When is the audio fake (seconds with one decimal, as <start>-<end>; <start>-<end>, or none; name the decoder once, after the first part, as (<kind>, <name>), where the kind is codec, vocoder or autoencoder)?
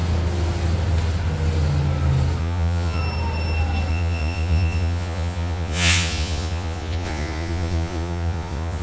2.4-3.0 (vocoder, Vocos); 3.9-8.8